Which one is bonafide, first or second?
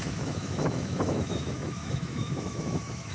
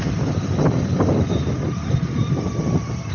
second